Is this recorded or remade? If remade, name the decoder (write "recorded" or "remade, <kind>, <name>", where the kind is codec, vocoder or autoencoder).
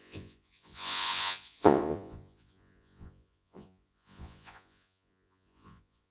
remade, vocoder, Vocos